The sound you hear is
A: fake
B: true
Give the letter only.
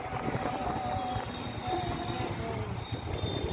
B